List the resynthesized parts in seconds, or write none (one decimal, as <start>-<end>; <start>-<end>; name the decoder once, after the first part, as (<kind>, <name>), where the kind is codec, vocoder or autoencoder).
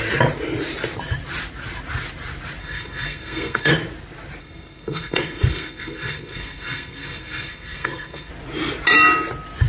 2.6-3.7 (codec, SNAC); 4.4-8.3